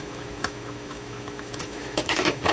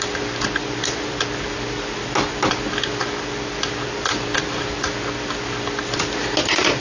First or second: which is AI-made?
first